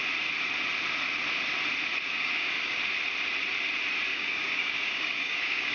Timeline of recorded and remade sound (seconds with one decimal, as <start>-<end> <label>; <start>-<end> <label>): 0.0-2.1 recorded; 2.1-2.8 remade; 2.8-4.1 recorded; 4.1-5.7 remade